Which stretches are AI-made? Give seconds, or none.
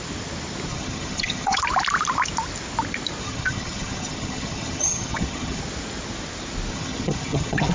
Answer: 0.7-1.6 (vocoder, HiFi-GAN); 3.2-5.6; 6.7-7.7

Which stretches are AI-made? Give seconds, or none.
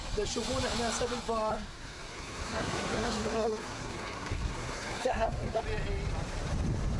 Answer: 1.5-5.6 (codec, SNAC)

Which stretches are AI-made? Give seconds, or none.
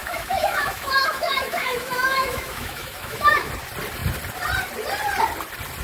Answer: 0.0-3.5 (autoencoder, DAC-VAE)